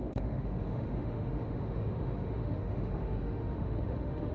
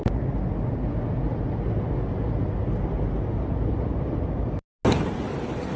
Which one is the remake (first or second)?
first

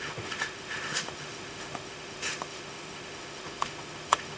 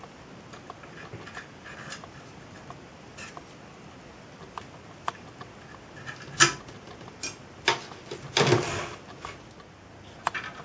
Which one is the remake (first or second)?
first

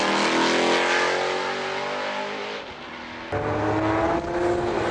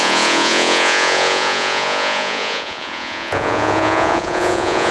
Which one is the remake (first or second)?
second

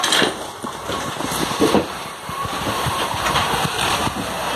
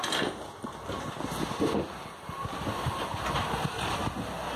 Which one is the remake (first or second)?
first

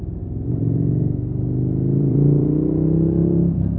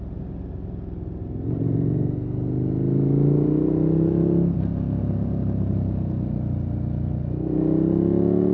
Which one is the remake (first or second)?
first